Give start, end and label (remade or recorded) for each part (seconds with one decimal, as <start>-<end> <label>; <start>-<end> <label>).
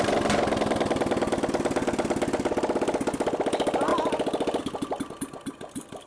0.0-6.1 recorded